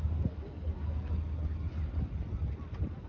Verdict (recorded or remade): recorded